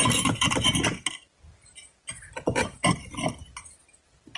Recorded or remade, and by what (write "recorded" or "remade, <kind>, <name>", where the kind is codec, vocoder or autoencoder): recorded